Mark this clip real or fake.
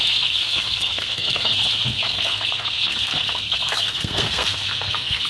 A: fake